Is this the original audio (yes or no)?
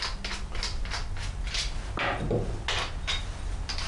yes